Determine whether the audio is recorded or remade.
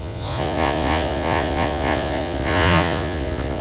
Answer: remade